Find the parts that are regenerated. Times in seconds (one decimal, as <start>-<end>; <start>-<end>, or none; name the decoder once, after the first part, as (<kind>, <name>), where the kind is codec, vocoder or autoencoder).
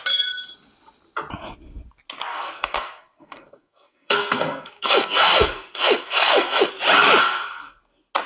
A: 2.3-6.7 (codec, SNAC); 7.2-7.8